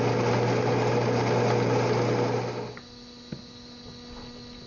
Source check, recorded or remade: recorded